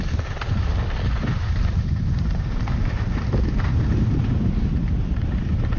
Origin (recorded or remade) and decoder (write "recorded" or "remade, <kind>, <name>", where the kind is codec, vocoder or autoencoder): remade, vocoder, BigVGAN v2